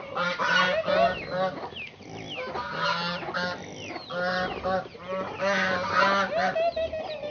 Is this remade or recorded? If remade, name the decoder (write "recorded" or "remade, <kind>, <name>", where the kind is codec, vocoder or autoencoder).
recorded